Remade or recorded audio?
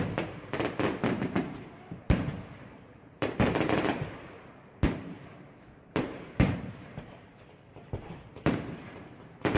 remade